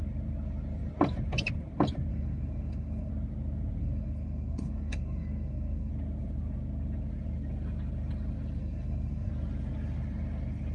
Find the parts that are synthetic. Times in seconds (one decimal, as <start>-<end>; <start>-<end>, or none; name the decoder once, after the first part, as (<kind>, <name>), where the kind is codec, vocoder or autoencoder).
2.1-3.1 (codec, SNAC); 3.8-5.9; 8.6-9.3